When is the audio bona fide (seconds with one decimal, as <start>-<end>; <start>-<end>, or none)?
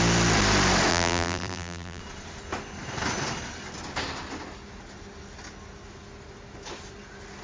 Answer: 0.0-0.9; 2.0-7.4